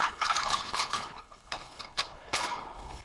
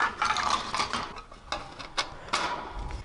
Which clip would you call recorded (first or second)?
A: second